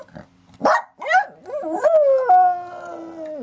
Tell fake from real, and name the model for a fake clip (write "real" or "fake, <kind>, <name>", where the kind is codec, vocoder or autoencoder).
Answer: real